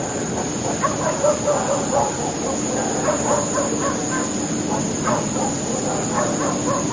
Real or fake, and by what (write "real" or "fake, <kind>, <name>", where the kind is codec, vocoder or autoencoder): real